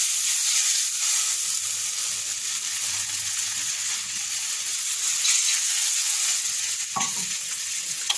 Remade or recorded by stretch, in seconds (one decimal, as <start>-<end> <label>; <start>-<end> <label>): 0.0-2.7 recorded; 2.7-8.2 remade